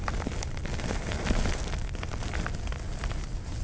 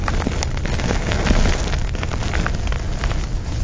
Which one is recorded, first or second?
second